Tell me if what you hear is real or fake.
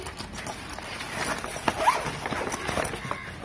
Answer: real